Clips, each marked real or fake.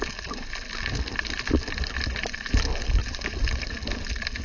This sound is real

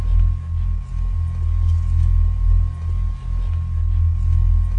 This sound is real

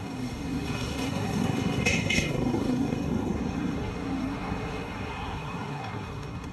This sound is fake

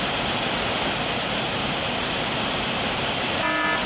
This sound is real